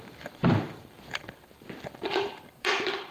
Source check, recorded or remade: remade